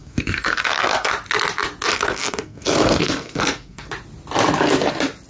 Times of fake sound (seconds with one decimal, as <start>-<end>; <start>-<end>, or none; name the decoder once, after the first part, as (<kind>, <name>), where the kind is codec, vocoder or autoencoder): 0.0-1.1 (codec, SNAC); 1.9-3.9